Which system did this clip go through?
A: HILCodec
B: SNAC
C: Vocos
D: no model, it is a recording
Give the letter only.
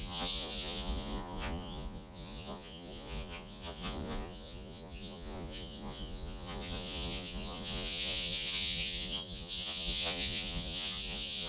C